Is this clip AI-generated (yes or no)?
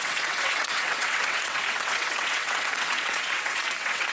yes